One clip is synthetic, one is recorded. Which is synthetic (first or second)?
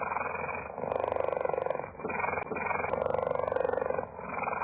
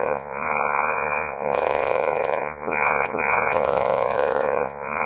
second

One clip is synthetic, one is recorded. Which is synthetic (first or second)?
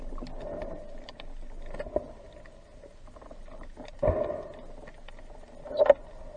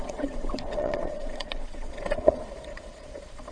second